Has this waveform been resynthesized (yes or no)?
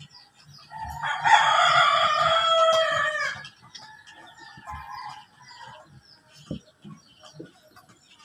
no